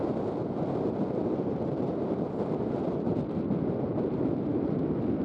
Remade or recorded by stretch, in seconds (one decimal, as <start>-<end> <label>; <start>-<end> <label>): 0.0-4.5 recorded; 4.5-5.2 remade